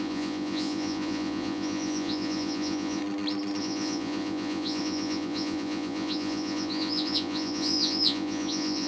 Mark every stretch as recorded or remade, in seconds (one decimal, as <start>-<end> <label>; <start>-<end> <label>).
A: 0.0-3.0 remade; 3.0-3.6 recorded; 3.6-8.9 remade